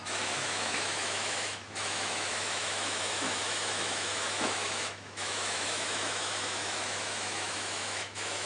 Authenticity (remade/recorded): remade